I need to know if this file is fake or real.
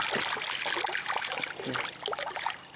real